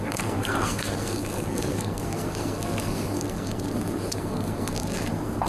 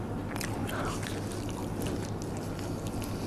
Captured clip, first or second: second